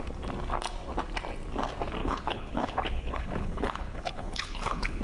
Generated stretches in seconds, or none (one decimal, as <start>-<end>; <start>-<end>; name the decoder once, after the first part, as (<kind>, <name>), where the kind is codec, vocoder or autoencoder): 2.0-5.0 (codec, HILCodec)